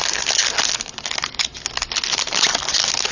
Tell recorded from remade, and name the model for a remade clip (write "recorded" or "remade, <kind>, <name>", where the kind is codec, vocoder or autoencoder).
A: recorded